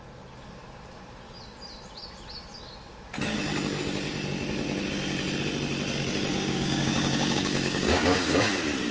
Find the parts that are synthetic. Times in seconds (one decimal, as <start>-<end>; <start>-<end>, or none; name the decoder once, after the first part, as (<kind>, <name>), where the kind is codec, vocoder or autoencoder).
6.3-8.5 (codec, DAC)